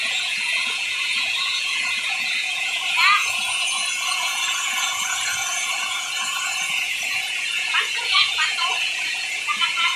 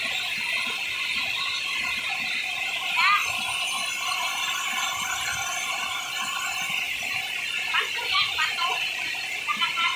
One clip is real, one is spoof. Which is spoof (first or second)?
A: first